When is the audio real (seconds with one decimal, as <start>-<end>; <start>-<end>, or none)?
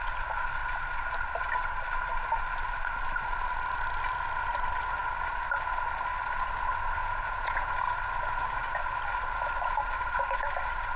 0.0-7.0; 7.7-11.0